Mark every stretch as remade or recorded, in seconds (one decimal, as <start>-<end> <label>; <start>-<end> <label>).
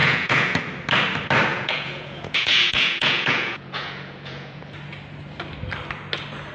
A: 0.0-0.6 remade; 0.6-1.5 recorded; 1.5-4.6 remade; 4.6-6.5 recorded